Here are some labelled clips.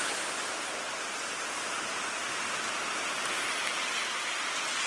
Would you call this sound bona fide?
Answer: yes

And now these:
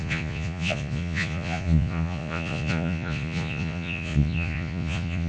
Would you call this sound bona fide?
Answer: no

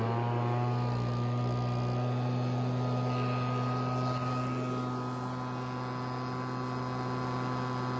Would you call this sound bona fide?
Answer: yes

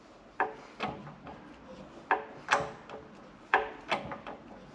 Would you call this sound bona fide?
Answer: yes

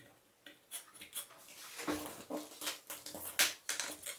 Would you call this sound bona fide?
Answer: yes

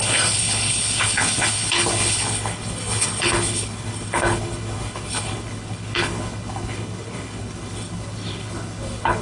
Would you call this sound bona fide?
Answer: no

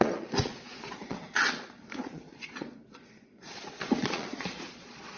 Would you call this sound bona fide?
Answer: no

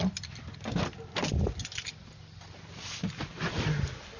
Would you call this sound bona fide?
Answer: yes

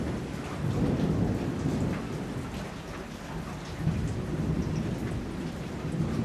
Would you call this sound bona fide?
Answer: yes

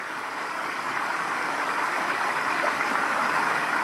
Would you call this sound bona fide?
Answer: no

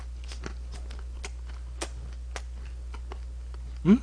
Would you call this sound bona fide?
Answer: yes